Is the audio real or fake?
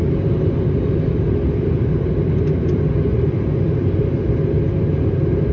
real